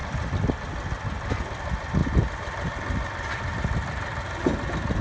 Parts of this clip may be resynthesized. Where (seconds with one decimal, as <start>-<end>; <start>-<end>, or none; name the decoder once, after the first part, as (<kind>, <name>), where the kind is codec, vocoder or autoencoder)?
none